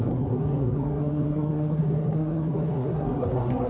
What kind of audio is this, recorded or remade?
remade